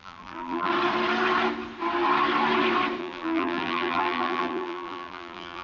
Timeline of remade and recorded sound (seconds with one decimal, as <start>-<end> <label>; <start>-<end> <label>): 0.0-0.7 remade; 0.7-3.0 recorded; 3.0-5.6 remade